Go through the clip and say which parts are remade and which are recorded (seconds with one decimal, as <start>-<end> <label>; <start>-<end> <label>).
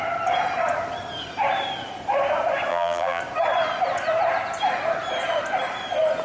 0.0-2.7 recorded; 2.7-3.2 remade; 3.2-6.2 recorded